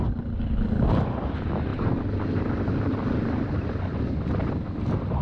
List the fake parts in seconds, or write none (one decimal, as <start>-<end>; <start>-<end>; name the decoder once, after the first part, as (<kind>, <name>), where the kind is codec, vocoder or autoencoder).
none